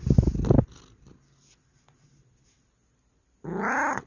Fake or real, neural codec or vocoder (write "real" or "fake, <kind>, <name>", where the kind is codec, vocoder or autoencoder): real